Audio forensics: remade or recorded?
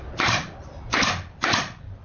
recorded